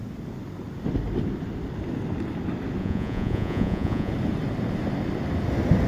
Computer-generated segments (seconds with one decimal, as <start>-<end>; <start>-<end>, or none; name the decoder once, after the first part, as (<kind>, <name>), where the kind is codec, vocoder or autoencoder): 2.8-4.1 (vocoder, Vocos)